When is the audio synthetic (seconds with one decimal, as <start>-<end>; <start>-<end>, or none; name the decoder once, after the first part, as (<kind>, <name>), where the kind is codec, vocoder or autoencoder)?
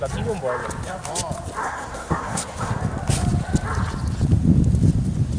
1.6-2.8 (codec, SNAC)